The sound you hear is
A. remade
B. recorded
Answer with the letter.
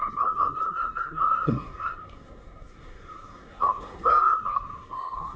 A